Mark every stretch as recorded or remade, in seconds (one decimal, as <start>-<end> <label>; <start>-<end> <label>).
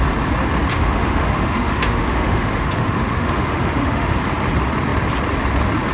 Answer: 0.0-0.7 recorded; 0.7-4.2 remade; 4.2-5.9 recorded